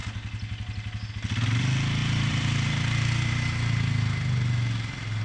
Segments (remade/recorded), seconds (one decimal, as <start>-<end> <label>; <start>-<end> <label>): 0.0-2.0 recorded; 2.0-3.5 remade; 3.5-5.2 recorded